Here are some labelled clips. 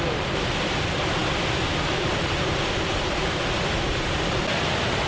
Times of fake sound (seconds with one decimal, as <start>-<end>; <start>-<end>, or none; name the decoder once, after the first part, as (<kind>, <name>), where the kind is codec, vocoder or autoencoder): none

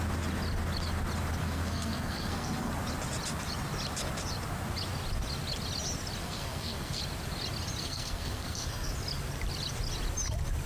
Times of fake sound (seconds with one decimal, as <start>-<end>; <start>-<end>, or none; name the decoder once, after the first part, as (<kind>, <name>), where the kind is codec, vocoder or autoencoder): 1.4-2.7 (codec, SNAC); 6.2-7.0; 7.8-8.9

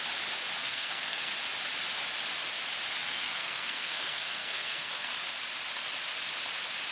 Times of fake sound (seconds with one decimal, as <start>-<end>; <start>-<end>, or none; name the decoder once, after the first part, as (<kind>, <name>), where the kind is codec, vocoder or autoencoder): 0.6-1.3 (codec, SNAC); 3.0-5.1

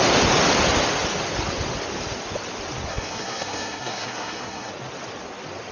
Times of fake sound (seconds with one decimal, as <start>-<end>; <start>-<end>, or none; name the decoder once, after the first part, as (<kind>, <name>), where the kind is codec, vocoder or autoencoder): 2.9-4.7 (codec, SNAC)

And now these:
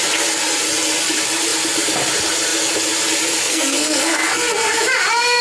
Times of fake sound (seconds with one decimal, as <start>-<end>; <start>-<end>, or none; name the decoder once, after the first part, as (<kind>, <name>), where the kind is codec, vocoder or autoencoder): 3.4-4.8 (codec, SNAC)